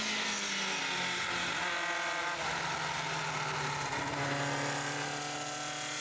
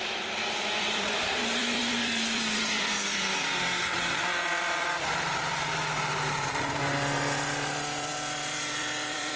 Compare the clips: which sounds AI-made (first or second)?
second